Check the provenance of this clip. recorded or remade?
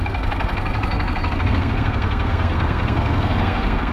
remade